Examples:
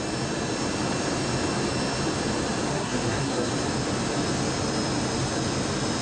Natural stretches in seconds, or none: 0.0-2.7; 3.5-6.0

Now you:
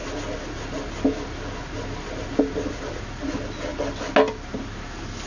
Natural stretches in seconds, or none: 0.0-5.3

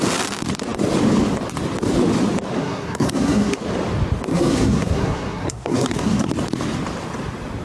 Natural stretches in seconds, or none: 0.0-2.6; 3.6-4.3; 6.3-7.6

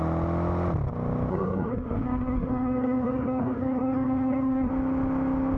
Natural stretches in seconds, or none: 0.0-1.3; 4.7-5.6

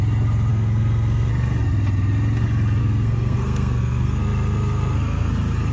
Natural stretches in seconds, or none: 0.0-0.5; 1.3-2.8; 5.3-5.7

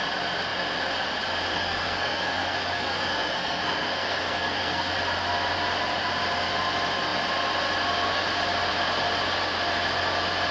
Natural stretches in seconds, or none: 0.0-1.5; 4.9-10.5

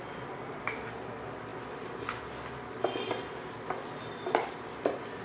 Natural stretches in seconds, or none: 0.0-5.2

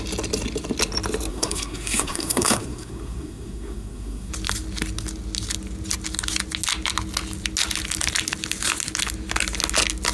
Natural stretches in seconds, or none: 0.0-1.3; 4.3-10.1